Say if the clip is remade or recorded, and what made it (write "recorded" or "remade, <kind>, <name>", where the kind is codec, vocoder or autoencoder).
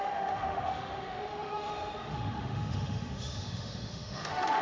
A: remade, autoencoder, DAC-VAE